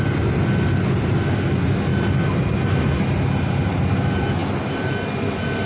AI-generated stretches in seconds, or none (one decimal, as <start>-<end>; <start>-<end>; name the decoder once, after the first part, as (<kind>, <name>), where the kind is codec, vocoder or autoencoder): none